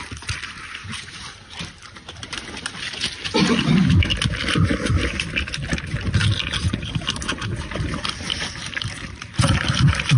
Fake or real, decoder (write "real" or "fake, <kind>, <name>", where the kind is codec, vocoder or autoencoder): real